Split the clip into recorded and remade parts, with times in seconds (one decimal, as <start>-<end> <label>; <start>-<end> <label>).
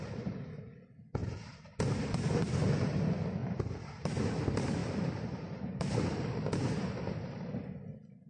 0.0-1.2 recorded; 1.2-3.0 remade; 3.0-3.4 recorded; 3.4-4.2 remade; 4.2-4.8 recorded; 4.8-5.8 remade; 5.8-8.3 recorded